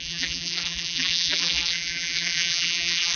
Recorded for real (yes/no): no